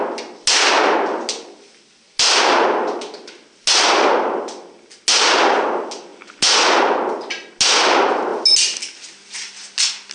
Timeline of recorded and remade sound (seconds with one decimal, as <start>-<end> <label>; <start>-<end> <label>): 0.0-10.1 recorded